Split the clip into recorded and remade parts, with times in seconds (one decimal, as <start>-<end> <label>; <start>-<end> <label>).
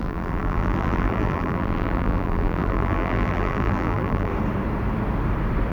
0.0-4.3 remade; 4.3-5.7 recorded